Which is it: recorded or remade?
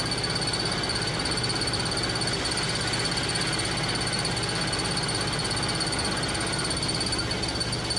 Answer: recorded